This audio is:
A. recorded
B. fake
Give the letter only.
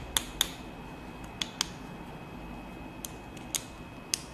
A